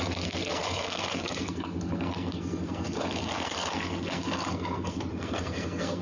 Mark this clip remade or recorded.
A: remade